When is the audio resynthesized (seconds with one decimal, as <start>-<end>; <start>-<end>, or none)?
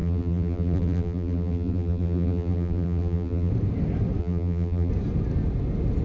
0.0-3.5; 4.2-4.9